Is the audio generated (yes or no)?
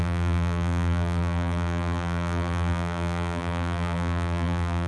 yes